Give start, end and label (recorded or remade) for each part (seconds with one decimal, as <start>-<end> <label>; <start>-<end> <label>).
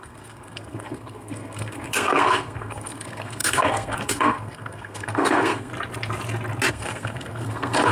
0.0-5.7 remade; 5.7-6.7 recorded; 6.7-7.9 remade